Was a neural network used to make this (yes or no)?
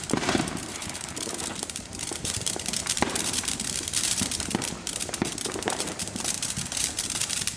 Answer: yes